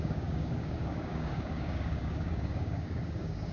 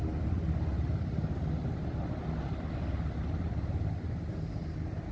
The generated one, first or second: first